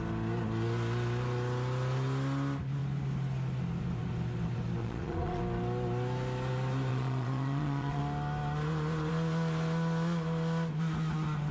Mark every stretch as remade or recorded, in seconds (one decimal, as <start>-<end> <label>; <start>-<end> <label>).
0.0-4.8 recorded; 4.8-5.4 remade; 5.4-6.9 recorded; 6.9-8.0 remade; 8.0-11.5 recorded